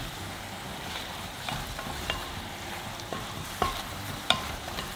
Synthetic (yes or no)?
yes